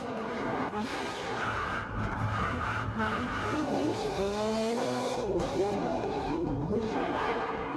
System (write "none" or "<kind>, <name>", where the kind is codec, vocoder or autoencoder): codec, SNAC